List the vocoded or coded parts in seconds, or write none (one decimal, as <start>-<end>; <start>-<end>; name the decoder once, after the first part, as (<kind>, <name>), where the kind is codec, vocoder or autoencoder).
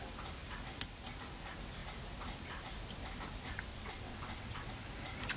3.7-4.7 (vocoder, WaveNeXt)